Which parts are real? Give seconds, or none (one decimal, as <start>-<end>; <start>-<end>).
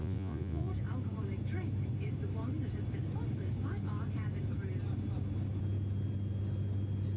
0.7-7.2